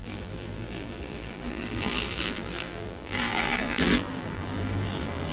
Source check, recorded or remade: remade